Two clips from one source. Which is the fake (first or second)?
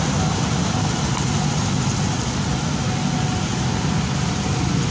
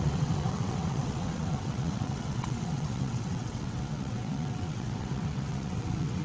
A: second